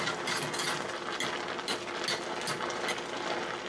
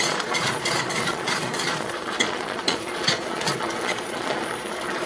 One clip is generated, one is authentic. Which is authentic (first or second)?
first